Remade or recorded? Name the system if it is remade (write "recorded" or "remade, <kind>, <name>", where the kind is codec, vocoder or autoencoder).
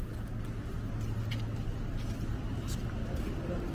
recorded